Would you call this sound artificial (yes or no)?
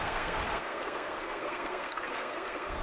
yes